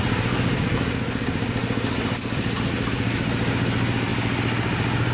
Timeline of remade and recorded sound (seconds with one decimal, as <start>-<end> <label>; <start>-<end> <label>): 0.0-0.7 remade; 0.7-1.2 recorded; 1.2-1.6 remade; 1.6-2.9 recorded; 2.9-4.1 remade; 4.1-5.1 recorded